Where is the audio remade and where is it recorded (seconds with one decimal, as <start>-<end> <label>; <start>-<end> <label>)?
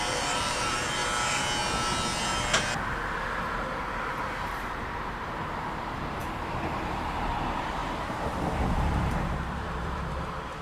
0.0-1.0 remade; 1.0-4.4 recorded; 4.4-10.6 remade